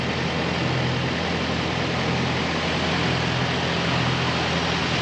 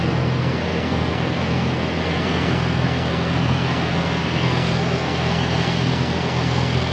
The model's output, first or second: second